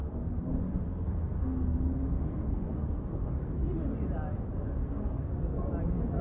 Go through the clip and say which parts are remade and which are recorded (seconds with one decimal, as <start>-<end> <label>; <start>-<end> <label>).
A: 0.0-3.7 remade; 3.7-4.8 recorded; 4.8-5.4 remade; 5.4-6.2 recorded